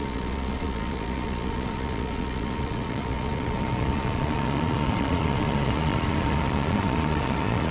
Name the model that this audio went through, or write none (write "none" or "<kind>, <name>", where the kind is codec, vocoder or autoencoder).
vocoder, Vocos